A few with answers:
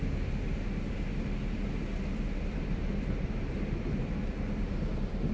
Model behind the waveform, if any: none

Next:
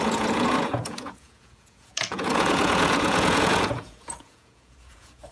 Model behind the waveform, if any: vocoder, Vocos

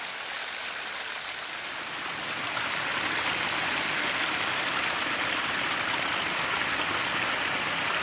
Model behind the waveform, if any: none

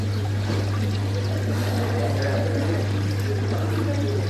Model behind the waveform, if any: none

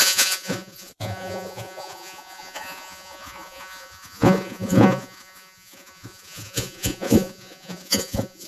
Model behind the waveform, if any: vocoder, Vocos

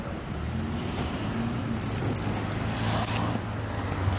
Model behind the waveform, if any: none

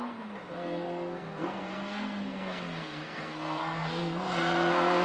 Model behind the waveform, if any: codec, SNAC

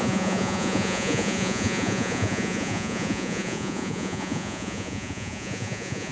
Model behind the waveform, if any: vocoder, Vocos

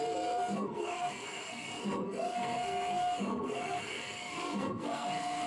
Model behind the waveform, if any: codec, SNAC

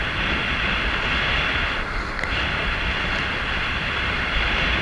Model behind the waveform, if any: none